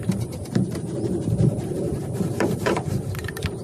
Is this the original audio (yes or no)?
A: no